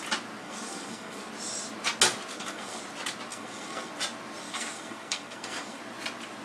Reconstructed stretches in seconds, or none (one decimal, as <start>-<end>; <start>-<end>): 0.4-1.3; 2.3-2.8; 3.3-3.9; 4.4-5.8